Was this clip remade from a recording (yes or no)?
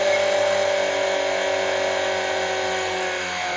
no